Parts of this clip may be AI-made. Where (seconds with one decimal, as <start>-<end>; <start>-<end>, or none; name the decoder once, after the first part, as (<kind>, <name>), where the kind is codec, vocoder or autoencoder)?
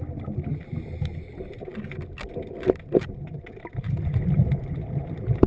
none